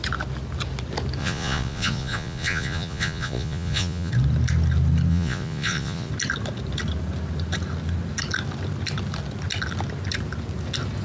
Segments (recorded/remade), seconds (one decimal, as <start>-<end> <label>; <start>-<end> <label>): 0.0-1.2 recorded; 1.2-4.1 remade; 4.1-5.1 recorded; 5.1-6.1 remade; 6.1-11.0 recorded